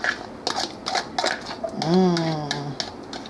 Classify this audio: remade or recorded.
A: recorded